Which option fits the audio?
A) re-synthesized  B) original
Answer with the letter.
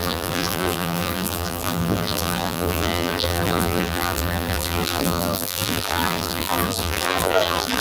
A